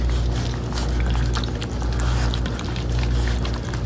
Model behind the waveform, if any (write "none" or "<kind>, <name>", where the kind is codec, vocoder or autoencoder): none